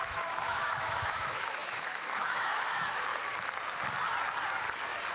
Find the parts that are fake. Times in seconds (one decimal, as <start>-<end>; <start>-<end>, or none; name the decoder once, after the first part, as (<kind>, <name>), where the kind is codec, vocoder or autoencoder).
0.0-3.1 (autoencoder, DAC-VAE)

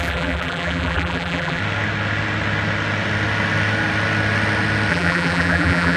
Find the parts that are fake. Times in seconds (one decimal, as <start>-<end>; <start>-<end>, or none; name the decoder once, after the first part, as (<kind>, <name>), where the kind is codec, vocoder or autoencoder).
0.0-1.6 (vocoder, BigVGAN v2); 4.9-6.0

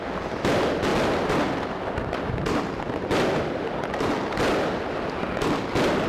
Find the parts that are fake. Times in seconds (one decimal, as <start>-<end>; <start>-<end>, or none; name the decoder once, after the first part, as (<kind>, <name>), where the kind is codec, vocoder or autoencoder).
none

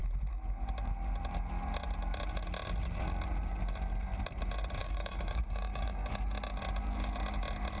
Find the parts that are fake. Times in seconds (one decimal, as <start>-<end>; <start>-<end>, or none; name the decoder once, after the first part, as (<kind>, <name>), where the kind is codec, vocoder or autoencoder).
4.8-6.1 (codec, DAC)

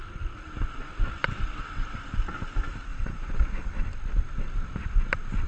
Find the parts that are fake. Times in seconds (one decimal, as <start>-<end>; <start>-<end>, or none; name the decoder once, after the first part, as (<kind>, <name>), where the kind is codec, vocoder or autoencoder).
1.2-2.0 (vocoder, WaveNeXt); 2.9-3.8

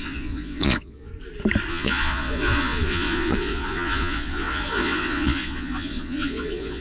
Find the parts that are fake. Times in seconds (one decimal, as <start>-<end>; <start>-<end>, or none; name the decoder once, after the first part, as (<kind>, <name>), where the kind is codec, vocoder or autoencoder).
0.0-1.1 (vocoder, Vocos); 1.7-6.8